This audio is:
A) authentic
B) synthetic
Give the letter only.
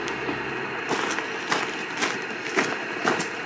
A